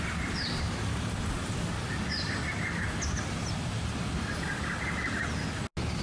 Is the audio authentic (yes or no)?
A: yes